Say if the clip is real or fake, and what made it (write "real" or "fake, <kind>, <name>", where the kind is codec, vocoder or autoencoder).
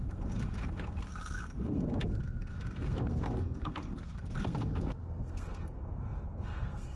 fake, codec, SNAC